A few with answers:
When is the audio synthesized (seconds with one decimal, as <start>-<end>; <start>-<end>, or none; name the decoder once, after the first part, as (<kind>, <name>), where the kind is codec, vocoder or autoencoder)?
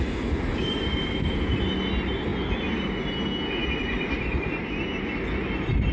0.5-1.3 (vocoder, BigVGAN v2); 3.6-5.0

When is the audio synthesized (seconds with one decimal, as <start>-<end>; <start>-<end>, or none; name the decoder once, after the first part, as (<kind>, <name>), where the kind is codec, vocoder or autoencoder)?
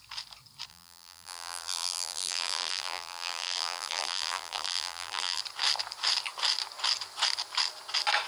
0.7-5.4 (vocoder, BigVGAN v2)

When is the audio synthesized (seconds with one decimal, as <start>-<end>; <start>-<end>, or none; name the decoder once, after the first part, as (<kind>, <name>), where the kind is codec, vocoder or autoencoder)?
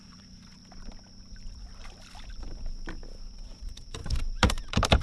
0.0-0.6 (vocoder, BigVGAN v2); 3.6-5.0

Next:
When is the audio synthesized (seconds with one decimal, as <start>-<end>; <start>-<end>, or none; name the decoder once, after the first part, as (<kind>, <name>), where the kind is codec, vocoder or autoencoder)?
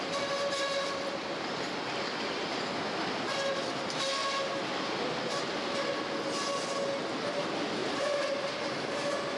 7.8-8.3 (vocoder, BigVGAN v2)